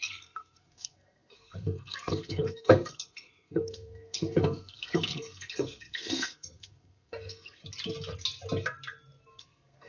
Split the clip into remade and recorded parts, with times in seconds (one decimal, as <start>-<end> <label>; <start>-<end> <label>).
0.0-7.6 remade; 7.6-9.4 recorded; 9.4-9.9 remade